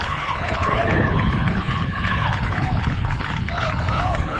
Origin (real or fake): fake